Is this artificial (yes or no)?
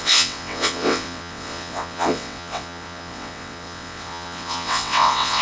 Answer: yes